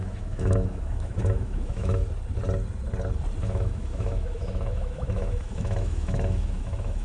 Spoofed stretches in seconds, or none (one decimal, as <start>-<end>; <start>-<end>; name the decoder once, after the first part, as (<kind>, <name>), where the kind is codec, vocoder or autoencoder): 0.0-2.0 (autoencoder, DAC-VAE); 3.4-7.0